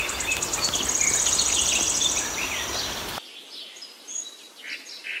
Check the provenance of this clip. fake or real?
real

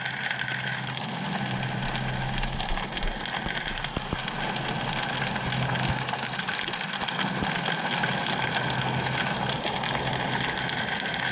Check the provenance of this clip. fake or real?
real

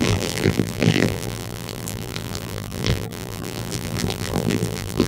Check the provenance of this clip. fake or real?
fake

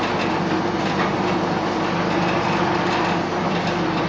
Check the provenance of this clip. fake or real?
real